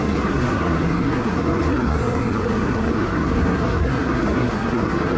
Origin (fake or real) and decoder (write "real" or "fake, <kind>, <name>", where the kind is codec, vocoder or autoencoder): fake, codec, SNAC